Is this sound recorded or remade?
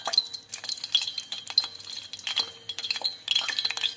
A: recorded